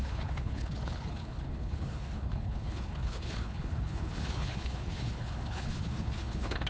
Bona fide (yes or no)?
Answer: no